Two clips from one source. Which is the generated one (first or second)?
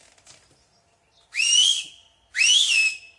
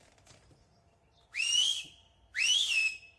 second